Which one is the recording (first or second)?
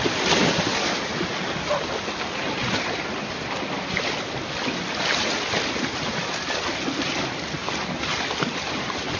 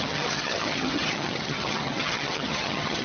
first